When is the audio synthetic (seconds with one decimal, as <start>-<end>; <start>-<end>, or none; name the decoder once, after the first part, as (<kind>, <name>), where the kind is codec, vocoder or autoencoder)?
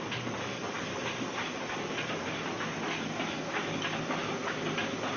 none